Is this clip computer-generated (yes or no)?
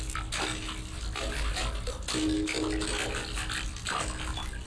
no